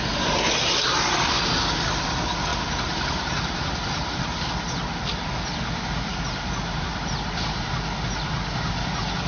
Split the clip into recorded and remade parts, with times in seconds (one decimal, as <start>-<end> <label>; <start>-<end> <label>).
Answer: 0.0-2.5 recorded; 2.5-4.5 remade; 4.5-6.1 recorded; 6.1-6.9 remade; 6.9-9.3 recorded